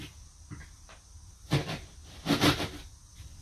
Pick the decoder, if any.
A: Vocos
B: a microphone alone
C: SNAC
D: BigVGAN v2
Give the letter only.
B